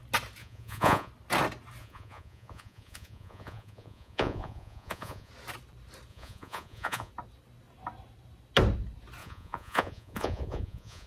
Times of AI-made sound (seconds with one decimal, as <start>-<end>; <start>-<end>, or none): 0.4-1.1; 1.8-5.3; 6.1-7.1; 9.2-11.1